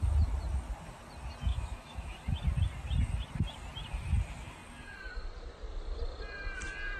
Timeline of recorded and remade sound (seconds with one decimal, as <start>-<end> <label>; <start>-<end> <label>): 0.0-1.5 recorded; 1.5-2.3 remade; 2.3-7.0 recorded